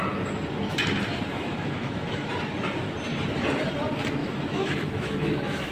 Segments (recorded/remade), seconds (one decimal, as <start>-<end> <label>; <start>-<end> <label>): 0.0-1.3 recorded; 1.3-2.3 remade; 2.3-4.2 recorded; 4.2-5.7 remade